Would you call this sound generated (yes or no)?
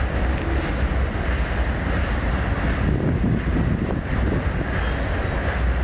no